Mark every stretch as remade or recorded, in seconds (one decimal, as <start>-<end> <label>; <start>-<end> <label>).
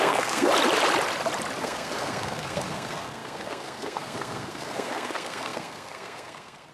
0.0-0.5 remade; 0.5-1.6 recorded; 1.6-6.7 remade